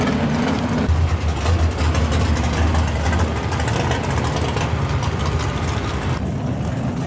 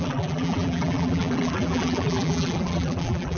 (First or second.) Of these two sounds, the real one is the first